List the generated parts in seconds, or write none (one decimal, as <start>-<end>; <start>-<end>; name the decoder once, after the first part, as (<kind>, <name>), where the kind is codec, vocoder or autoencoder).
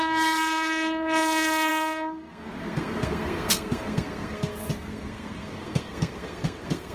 0.0-6.9 (codec, SNAC)